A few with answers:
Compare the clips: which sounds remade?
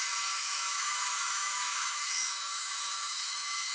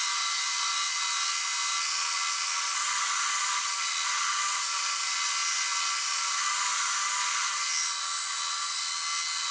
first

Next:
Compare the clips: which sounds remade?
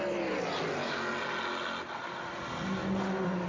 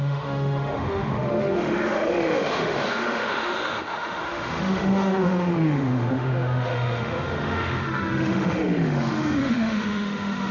second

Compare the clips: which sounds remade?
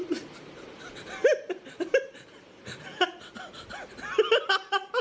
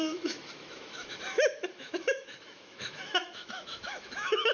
second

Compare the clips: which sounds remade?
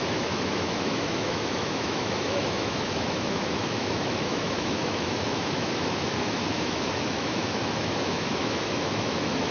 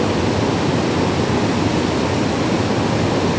first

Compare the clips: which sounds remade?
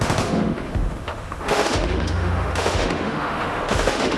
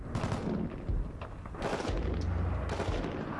first